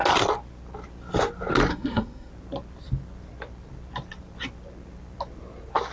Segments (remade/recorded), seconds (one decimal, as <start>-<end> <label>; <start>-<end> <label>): 0.0-1.7 recorded; 1.7-2.3 remade; 2.3-5.9 recorded